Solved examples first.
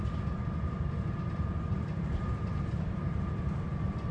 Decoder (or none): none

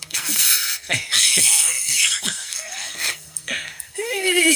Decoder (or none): codec, SNAC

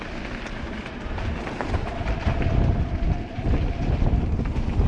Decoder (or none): vocoder, BigVGAN v2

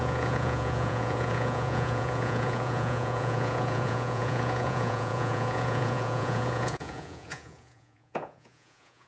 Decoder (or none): vocoder, Vocos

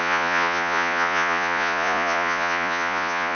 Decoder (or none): vocoder, Vocos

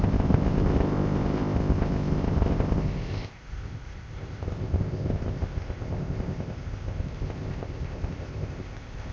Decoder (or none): codec, ZipCodec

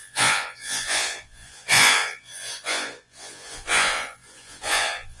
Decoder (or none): vocoder, Vocos